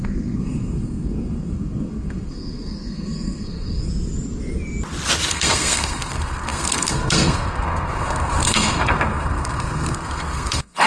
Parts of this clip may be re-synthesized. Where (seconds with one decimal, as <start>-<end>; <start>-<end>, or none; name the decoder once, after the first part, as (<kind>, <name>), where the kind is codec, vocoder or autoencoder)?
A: 0.0-3.9 (codec, SNAC); 5.3-10.9